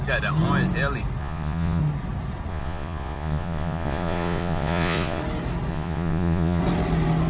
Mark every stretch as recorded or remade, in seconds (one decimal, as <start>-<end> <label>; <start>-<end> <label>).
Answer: 0.0-1.2 recorded; 1.2-1.8 remade; 1.8-2.5 recorded; 2.5-5.2 remade; 5.2-5.7 recorded; 5.7-6.6 remade; 6.6-7.3 recorded